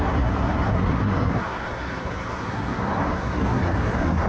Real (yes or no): no